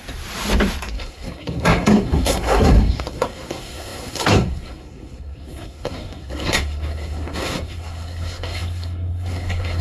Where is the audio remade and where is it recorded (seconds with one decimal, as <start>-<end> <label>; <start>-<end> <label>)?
0.0-0.9 recorded; 0.9-9.8 remade